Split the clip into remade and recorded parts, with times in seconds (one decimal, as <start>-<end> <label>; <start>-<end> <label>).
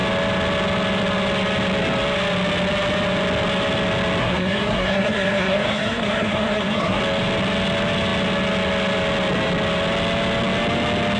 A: 0.0-4.2 recorded; 4.2-7.0 remade; 7.0-11.2 recorded